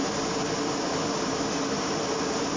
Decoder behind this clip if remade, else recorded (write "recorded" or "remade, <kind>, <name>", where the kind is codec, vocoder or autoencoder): recorded